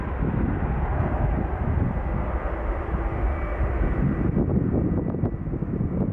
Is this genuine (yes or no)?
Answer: yes